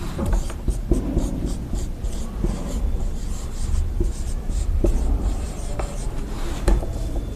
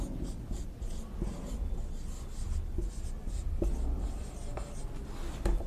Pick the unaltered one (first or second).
second